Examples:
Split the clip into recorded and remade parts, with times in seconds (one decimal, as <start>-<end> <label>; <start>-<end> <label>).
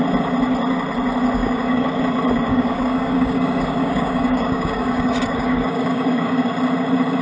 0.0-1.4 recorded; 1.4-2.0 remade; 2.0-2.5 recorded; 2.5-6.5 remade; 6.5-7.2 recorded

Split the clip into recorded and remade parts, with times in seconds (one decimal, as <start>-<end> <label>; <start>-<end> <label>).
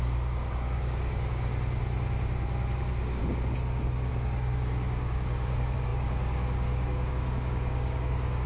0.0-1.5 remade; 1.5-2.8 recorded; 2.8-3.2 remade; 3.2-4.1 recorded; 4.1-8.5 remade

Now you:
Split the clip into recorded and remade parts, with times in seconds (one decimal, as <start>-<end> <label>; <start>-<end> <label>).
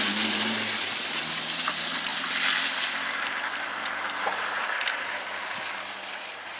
0.0-6.6 recorded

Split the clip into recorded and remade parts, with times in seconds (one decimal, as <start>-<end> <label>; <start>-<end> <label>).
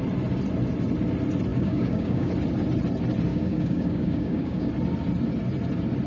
0.0-1.5 recorded; 1.5-2.3 remade; 2.3-3.3 recorded; 3.3-4.7 remade; 4.7-6.1 recorded